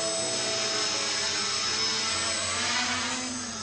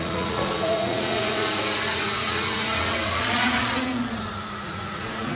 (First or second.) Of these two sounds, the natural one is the first